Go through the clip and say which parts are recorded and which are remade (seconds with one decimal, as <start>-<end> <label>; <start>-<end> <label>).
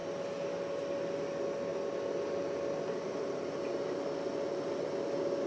0.0-5.5 recorded